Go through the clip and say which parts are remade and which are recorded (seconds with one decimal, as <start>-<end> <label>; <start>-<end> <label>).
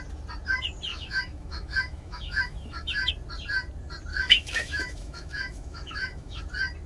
0.0-0.9 recorded; 0.9-3.1 remade; 3.1-4.1 recorded; 4.1-6.4 remade; 6.4-6.9 recorded